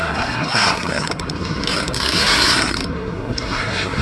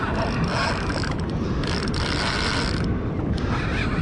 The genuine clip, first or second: second